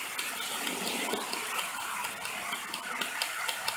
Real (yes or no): yes